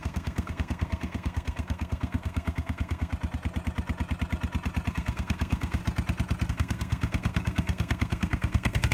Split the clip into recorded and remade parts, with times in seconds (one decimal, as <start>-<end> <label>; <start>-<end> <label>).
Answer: 0.0-3.1 remade; 3.1-4.9 recorded; 4.9-5.8 remade; 5.8-6.5 recorded; 6.5-8.9 remade